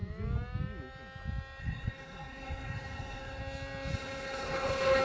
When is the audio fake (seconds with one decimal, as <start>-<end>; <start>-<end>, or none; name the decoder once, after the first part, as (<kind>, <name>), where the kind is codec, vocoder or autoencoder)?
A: 1.6-3.4 (codec, HILCodec); 3.9-5.0